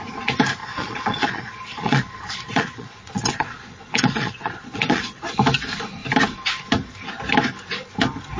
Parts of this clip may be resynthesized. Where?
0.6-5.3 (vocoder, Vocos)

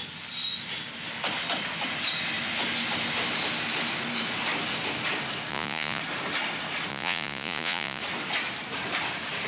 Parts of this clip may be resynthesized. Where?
5.5-6.0 (vocoder, Vocos); 6.9-8.0

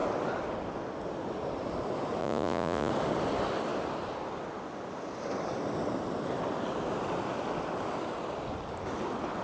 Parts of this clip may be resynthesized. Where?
2.2-2.9 (vocoder, Vocos)

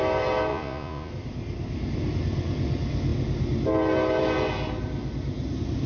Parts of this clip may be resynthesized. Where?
0.5-1.1 (vocoder, Vocos)